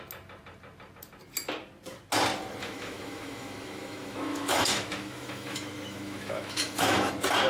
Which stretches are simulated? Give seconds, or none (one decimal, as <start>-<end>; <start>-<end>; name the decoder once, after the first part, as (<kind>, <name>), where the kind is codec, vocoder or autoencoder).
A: 2.6-7.1 (autoencoder, DAC-VAE)